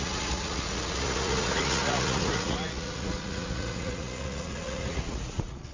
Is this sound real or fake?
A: fake